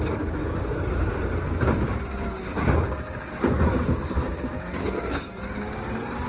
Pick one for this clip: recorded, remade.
remade